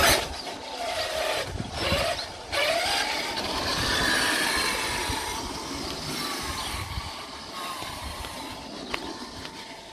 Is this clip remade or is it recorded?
remade